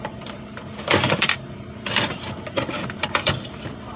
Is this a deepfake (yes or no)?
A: yes